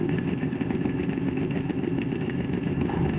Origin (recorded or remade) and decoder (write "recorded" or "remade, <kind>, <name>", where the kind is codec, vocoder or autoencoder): remade, codec, ZipCodec